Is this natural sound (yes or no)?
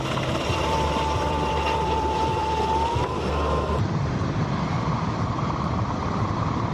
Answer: no